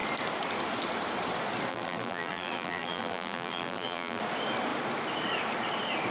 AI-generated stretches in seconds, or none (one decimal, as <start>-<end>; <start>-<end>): 1.7-4.2